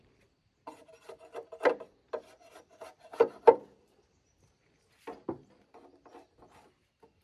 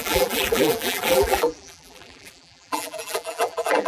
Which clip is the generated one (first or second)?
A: second